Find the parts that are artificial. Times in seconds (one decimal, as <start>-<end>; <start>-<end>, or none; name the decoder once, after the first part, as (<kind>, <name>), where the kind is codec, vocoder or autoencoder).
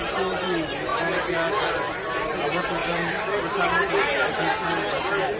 none